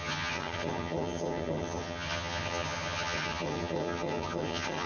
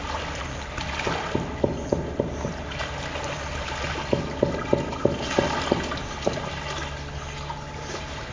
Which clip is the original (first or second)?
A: second